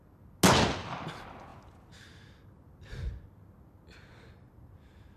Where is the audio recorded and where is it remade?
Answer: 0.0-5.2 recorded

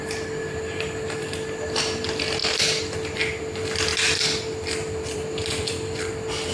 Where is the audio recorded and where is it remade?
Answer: 0.0-0.4 recorded; 0.4-1.2 remade; 1.2-2.4 recorded; 2.4-3.4 remade; 3.4-3.9 recorded; 3.9-6.0 remade; 6.0-6.5 recorded

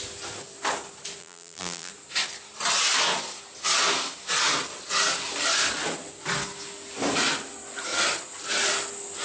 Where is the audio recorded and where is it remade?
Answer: 0.0-1.2 recorded; 1.2-1.9 remade; 1.9-9.2 recorded

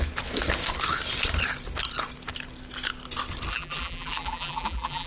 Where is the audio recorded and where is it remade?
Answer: 0.0-3.5 recorded; 3.5-5.1 remade